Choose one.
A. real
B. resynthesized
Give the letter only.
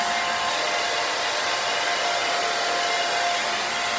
A